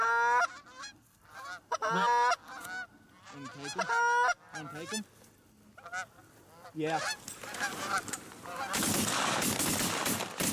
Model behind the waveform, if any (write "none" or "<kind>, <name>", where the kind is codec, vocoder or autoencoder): none